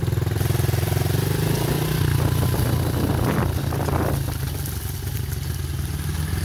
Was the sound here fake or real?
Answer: real